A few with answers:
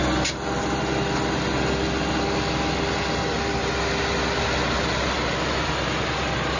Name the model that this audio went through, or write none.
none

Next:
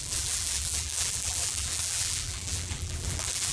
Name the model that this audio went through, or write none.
vocoder, BigVGAN v2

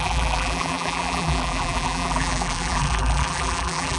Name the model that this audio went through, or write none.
vocoder, BigVGAN v2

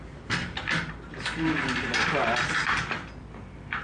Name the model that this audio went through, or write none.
vocoder, BigVGAN v2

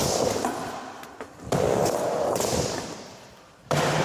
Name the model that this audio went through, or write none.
none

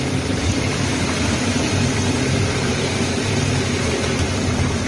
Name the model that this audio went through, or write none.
vocoder, BigVGAN v2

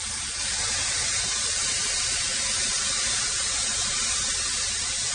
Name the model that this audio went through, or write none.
none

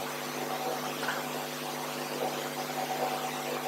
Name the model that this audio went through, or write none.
none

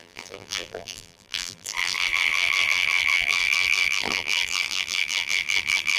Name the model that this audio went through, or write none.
vocoder, BigVGAN v2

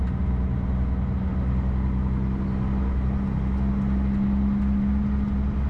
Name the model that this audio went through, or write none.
none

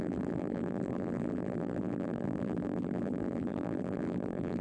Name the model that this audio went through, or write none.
vocoder, BigVGAN v2